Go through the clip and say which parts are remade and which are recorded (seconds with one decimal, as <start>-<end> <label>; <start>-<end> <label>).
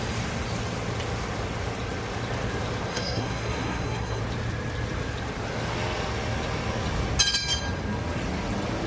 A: 0.0-2.9 recorded; 2.9-4.2 remade; 4.2-8.9 recorded